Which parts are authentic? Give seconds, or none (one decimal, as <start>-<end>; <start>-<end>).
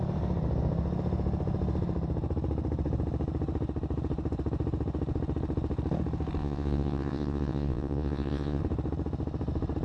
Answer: 0.0-6.4; 8.6-9.8